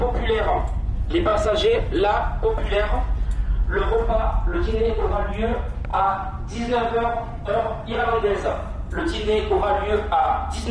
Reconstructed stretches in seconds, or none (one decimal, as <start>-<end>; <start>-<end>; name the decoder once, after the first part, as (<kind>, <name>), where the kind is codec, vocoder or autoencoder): 1.3-2.0 (vocoder, BigVGAN v2); 3.4-5.3; 5.9-9.5